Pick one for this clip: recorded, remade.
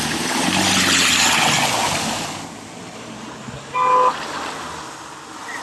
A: recorded